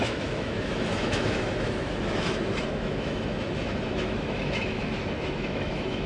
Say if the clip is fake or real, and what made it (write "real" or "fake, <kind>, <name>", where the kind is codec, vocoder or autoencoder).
fake, autoencoder, DAC-VAE